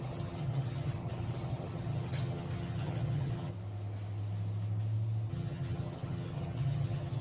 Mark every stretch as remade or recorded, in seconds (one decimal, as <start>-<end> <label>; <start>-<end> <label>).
0.0-3.5 remade; 3.5-5.3 recorded; 5.3-7.2 remade